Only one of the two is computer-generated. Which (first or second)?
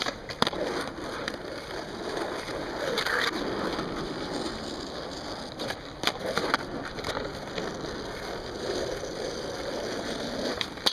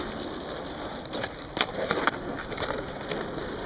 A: second